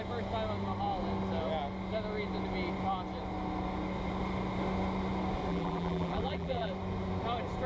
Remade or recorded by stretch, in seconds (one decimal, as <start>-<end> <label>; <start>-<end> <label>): 0.0-5.5 recorded; 5.5-6.7 remade; 6.7-7.7 recorded

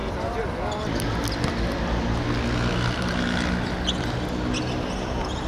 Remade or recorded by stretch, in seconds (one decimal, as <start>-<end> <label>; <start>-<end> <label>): 0.0-5.5 recorded